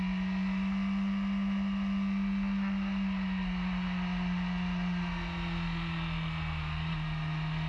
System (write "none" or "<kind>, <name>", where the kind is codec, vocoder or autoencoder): none